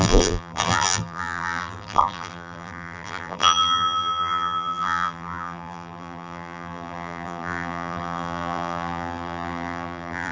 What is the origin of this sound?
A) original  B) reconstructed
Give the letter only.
B